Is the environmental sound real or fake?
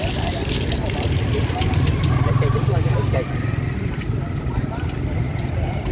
real